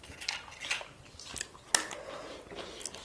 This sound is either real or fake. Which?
real